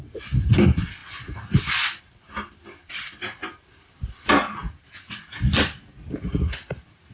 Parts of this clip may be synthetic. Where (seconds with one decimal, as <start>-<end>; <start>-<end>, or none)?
none

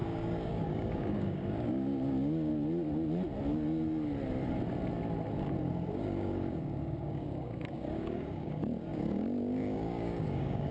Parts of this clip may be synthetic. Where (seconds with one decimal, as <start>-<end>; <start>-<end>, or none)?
0.0-2.5; 5.9-10.7

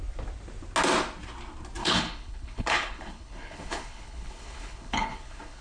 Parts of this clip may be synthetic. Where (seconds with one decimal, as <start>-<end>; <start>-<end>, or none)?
1.8-5.6

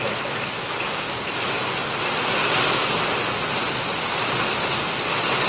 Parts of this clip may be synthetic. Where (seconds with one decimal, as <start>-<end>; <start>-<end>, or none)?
none

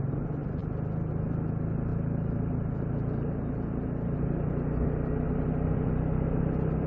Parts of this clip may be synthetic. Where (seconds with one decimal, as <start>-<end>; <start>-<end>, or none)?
none

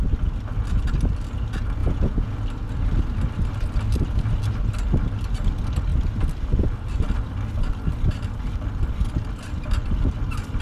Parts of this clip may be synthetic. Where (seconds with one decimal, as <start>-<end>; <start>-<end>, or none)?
1.8-2.4

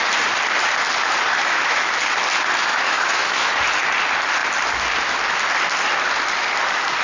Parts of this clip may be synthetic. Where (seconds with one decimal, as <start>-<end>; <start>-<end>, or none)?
1.4-1.9; 2.7-3.5